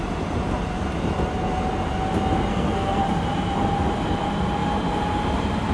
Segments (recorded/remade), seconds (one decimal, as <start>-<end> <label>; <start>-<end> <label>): 0.0-2.5 recorded; 2.5-3.0 remade; 3.0-5.7 recorded